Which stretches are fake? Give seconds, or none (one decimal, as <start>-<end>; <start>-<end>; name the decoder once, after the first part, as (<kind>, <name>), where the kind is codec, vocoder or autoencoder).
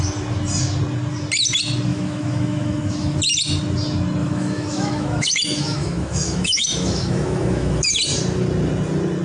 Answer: 1.9-3.2 (autoencoder, DAC-VAE); 4.2-8.0